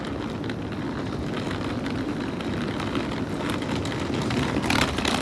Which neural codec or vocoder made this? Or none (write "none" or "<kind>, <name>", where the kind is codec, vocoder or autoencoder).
none